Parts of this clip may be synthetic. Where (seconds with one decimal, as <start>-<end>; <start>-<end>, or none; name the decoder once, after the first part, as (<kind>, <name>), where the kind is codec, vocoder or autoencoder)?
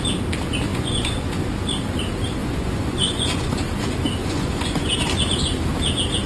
0.7-1.4 (vocoder, Vocos); 2.4-3.6; 4.2-4.9